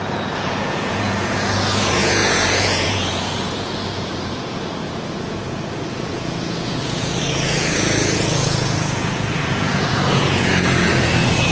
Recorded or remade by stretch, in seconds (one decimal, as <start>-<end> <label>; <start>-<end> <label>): 0.0-11.5 remade